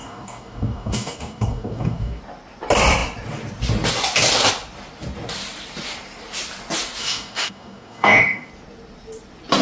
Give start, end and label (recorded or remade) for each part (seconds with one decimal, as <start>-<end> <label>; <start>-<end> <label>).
0.0-2.2 remade; 2.2-7.0 recorded; 7.0-8.5 remade; 8.5-9.6 recorded